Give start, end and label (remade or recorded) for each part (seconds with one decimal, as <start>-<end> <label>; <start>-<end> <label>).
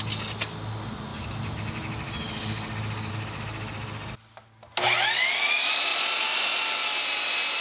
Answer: 0.0-5.9 recorded; 5.9-6.6 remade; 6.6-7.6 recorded